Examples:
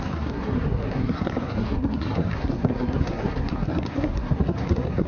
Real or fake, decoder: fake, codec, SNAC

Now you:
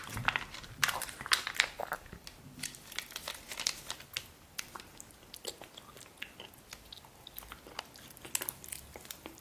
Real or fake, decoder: real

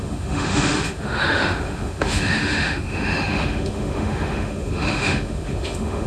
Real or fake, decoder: fake, autoencoder, DAC-VAE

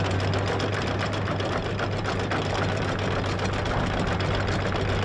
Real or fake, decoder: real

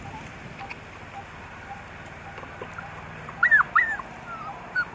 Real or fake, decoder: fake, vocoder, BigVGAN v2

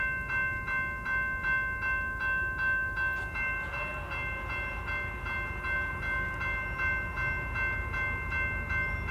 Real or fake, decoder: real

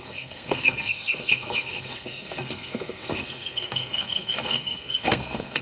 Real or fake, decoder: fake, codec, SNAC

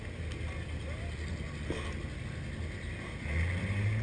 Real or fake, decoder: real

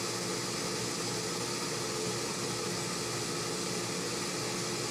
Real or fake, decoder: real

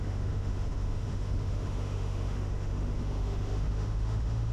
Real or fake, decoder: fake, autoencoder, DAC-VAE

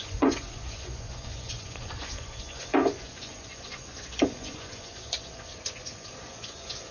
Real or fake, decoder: fake, vocoder, Vocos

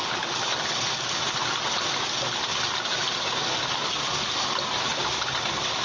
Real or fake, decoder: real